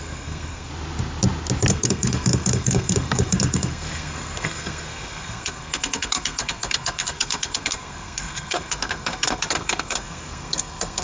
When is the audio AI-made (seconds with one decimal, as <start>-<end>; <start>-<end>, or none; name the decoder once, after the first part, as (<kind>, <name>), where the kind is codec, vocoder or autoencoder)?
0.0-0.7 (codec, SNAC); 1.7-11.0